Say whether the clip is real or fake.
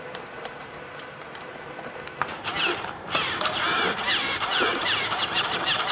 fake